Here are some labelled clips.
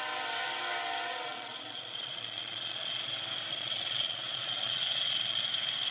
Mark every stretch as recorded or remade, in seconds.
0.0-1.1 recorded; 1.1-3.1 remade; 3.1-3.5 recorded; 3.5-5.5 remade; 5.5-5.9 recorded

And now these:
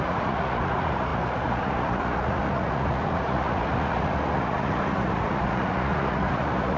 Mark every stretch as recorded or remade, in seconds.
0.0-6.8 remade

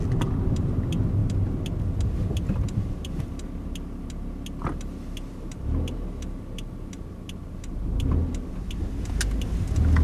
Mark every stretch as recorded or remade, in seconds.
0.0-10.0 recorded